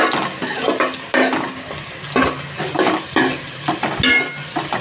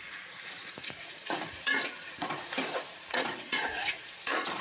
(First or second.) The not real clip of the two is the second